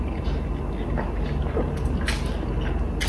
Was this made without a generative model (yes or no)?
yes